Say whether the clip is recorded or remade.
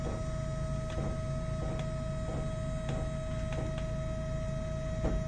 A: recorded